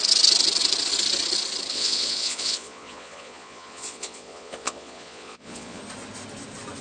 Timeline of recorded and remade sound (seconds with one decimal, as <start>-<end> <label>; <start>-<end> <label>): 0.0-1.7 recorded; 1.7-5.8 remade; 5.8-6.8 recorded